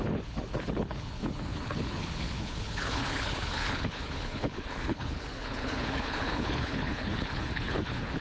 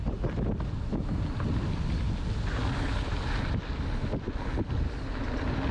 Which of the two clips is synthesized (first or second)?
first